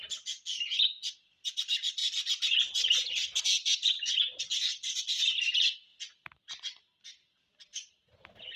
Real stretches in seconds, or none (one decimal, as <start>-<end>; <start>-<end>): 0.0-8.6